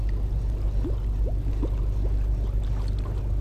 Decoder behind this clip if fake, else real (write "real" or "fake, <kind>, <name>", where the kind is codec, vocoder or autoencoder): real